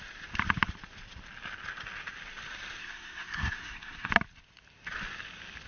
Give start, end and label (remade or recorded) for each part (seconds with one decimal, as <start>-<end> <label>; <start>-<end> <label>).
0.0-2.8 recorded; 2.8-4.1 remade; 4.1-5.7 recorded